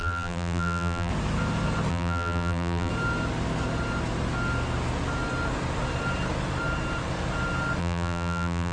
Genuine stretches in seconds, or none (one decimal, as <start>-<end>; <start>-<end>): 1.1-1.9; 2.9-7.8